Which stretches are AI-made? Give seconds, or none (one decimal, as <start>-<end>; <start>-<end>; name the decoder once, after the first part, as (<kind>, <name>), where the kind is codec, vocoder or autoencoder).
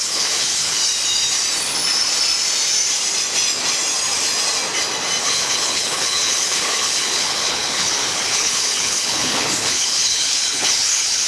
0.0-0.8 (codec, HILCodec); 5.2-11.3